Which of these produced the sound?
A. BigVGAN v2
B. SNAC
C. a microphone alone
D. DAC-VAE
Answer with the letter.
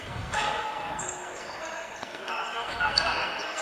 B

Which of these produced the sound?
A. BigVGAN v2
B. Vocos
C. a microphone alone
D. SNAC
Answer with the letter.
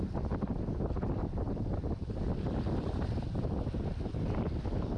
C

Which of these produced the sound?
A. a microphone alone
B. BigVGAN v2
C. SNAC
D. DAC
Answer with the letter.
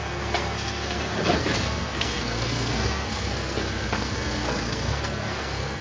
C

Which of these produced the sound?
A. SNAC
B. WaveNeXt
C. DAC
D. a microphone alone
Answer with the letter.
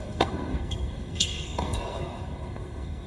A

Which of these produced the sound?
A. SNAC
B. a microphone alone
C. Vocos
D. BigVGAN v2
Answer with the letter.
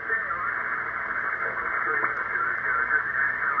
B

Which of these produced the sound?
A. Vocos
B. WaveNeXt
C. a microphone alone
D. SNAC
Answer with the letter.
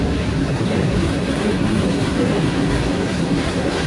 D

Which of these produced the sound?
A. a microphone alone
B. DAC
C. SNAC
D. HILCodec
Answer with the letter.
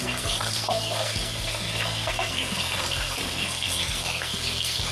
C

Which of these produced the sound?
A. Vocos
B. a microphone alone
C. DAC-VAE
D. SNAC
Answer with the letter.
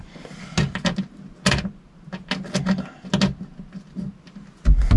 B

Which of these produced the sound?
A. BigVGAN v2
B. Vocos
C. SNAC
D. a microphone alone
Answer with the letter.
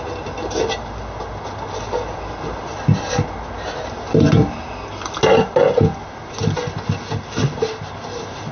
D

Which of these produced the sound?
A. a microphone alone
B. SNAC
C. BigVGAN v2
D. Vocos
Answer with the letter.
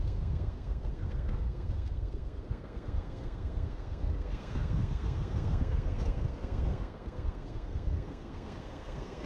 B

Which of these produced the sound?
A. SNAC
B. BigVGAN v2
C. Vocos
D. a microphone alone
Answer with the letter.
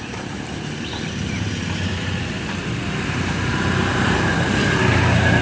D